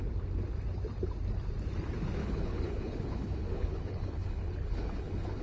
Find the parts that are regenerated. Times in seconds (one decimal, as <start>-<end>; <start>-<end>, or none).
2.2-5.4